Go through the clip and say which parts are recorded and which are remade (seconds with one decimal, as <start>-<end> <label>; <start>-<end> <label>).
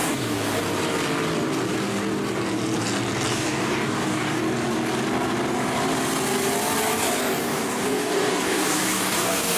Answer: 0.0-0.6 remade; 0.6-3.3 recorded; 3.3-4.4 remade; 4.4-7.4 recorded; 7.4-9.6 remade